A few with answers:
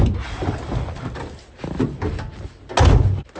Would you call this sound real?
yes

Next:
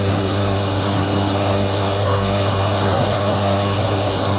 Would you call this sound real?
no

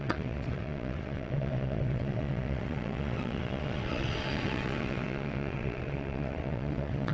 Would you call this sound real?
no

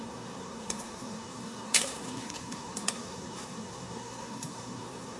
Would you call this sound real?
no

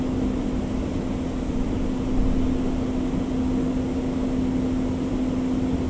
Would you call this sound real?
yes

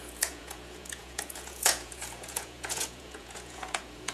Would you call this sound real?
no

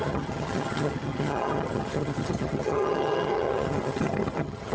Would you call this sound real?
no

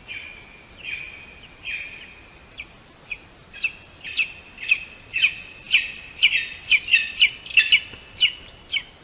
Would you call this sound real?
yes